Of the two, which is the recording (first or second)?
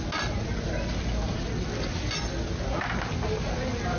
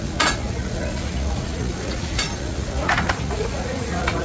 first